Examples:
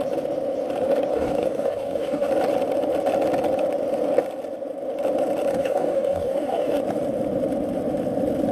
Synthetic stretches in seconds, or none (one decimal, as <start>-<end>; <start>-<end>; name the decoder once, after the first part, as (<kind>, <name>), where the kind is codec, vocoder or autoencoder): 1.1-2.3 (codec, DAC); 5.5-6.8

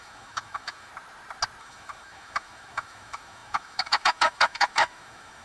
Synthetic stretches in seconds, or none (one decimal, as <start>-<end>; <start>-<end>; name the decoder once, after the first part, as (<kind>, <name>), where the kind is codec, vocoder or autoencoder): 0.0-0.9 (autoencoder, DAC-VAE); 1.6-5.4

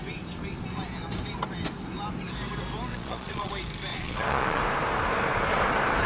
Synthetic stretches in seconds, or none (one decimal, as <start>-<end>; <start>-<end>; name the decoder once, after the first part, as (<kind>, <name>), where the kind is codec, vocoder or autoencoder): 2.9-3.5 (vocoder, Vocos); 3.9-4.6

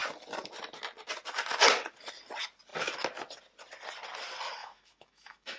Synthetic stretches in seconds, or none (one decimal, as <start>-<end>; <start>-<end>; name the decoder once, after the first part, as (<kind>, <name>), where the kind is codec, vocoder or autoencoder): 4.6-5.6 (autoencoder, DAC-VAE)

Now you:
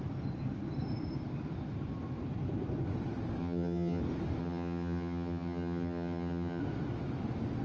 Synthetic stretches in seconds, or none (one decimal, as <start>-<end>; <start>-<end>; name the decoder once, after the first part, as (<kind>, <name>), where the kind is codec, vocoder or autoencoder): 3.4-4.0 (vocoder, HiFi-GAN); 4.4-6.6

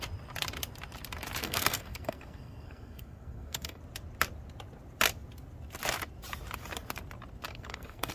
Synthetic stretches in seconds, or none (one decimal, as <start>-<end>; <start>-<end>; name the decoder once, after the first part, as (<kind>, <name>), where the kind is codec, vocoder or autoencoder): 1.4-3.8 (codec, SNAC); 7.5-8.1